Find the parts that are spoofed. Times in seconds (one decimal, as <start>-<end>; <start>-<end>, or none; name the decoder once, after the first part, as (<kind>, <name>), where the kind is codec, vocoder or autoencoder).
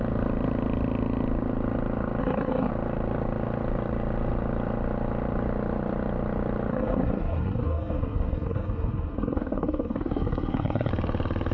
2.2-2.7 (codec, SNAC); 6.7-10.9